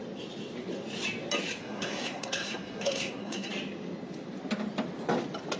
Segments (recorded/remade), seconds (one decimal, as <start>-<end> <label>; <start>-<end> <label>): 0.0-1.6 recorded; 1.6-3.5 remade; 3.5-5.6 recorded

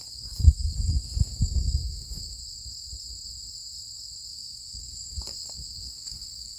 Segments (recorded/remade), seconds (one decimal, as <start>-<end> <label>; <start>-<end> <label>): 0.0-2.4 remade; 2.4-4.3 recorded; 4.3-6.6 remade

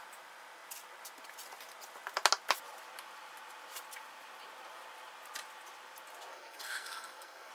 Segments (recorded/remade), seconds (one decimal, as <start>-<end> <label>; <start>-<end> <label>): 0.0-6.3 recorded; 6.3-7.5 remade

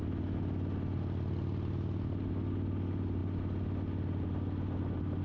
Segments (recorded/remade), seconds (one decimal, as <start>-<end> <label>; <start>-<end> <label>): 0.0-5.2 recorded